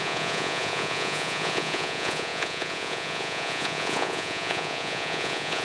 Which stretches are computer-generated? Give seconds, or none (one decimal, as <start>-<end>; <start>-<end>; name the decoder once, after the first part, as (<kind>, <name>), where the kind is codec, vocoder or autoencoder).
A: 0.0-5.6 (vocoder, Vocos)